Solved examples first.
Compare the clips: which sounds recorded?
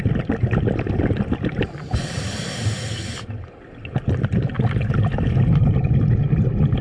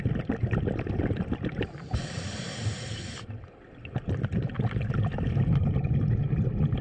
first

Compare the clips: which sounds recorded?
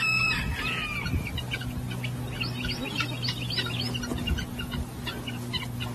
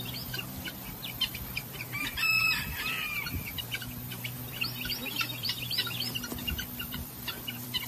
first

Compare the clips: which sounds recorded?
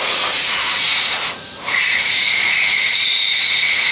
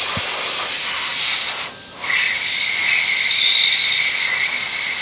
second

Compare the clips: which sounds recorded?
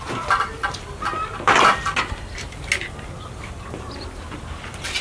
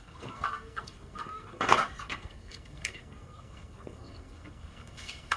first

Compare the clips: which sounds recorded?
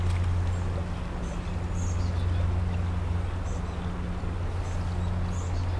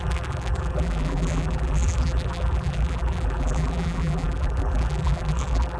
first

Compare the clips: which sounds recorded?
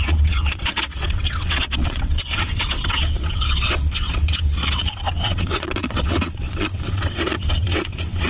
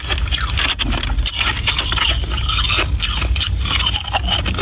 second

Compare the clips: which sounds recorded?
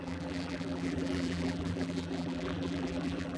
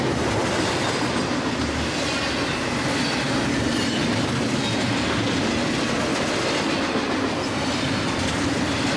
second